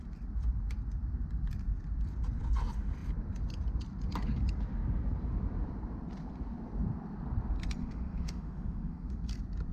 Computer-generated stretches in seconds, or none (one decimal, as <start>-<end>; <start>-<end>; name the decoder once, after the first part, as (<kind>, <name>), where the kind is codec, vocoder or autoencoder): 7.8-9.1 (autoencoder, DAC-VAE)